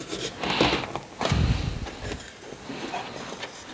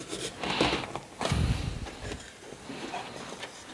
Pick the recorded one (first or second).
first